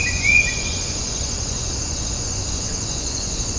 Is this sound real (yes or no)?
no